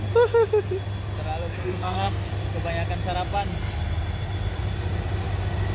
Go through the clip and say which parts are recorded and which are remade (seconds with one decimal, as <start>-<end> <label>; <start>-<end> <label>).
0.0-1.6 recorded; 1.6-2.3 remade; 2.3-5.7 recorded